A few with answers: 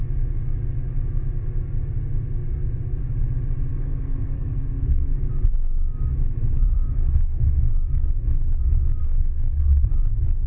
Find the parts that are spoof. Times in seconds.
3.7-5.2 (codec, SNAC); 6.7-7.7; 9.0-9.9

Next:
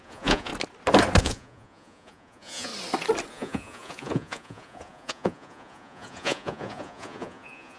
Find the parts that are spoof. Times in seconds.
0.0-0.5 (vocoder, Vocos); 1.2-2.7; 3.3-7.8

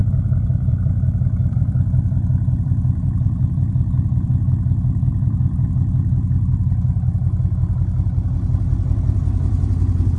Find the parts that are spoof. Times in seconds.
0.0-0.9 (vocoder, BigVGAN v2); 1.4-4.3; 5.1-5.7

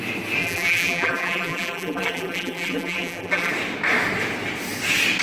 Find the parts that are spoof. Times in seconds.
0.4-3.5 (vocoder, BigVGAN v2)

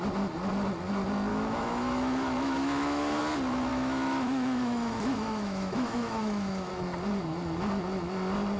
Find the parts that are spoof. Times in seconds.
1.3-3.2 (autoencoder, DAC-VAE); 3.7-6.7

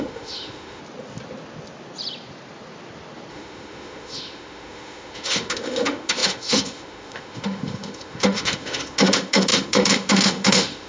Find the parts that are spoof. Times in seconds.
0.0-0.8 (autoencoder, DAC-VAE); 3.3-10.9